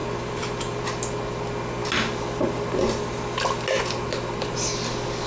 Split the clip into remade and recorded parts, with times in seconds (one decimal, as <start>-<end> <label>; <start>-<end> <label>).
0.0-0.8 remade; 0.8-5.3 recorded

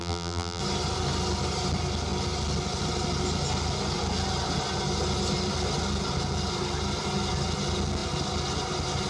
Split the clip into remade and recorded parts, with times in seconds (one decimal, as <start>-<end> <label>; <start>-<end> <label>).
0.0-0.6 remade; 0.6-9.1 recorded

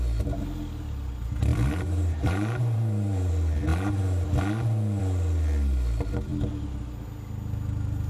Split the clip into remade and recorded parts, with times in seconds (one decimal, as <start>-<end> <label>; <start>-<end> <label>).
0.0-1.5 recorded; 1.5-3.3 remade; 3.3-8.1 recorded

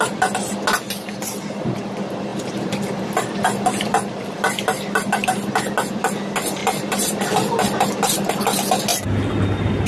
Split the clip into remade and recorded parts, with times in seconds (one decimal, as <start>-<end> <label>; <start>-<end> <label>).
0.0-2.3 recorded; 2.3-5.5 remade; 5.5-6.6 recorded; 6.6-8.3 remade; 8.3-8.9 recorded; 8.9-9.9 remade

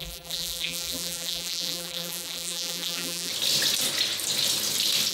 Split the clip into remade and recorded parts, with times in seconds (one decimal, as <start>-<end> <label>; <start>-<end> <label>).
0.0-3.3 remade; 3.3-5.1 recorded

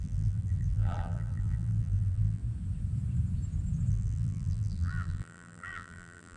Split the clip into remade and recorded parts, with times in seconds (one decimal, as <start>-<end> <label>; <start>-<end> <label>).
0.0-2.4 remade; 2.4-3.9 recorded; 3.9-6.4 remade